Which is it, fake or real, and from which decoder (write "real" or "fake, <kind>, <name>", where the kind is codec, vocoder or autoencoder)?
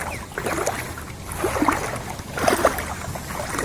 real